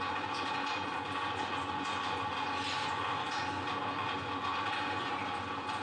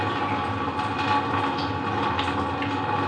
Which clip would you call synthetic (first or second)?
first